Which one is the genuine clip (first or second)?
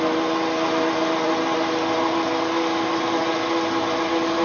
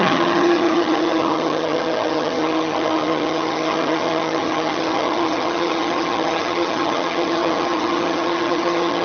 first